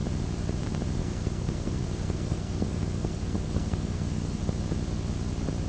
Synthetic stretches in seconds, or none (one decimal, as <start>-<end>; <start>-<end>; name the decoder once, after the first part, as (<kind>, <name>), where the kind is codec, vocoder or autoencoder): 1.0-4.4 (codec, SNAC)